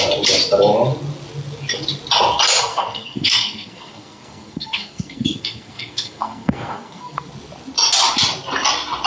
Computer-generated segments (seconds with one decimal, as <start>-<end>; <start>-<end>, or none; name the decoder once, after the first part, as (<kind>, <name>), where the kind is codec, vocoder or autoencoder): 2.7-7.3 (codec, SNAC)